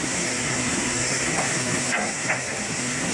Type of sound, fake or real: fake